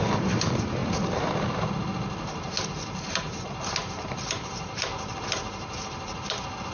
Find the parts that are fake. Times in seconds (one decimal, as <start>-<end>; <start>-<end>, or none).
0.0-6.7